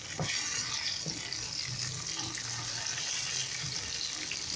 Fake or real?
real